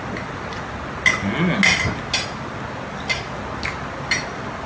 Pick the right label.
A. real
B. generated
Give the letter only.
A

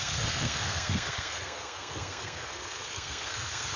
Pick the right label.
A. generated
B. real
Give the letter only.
A